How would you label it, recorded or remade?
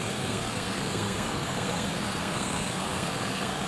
remade